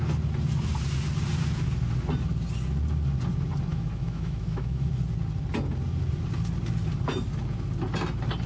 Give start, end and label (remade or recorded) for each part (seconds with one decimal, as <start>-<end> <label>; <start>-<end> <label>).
0.0-3.7 recorded; 3.7-4.9 remade; 4.9-8.5 recorded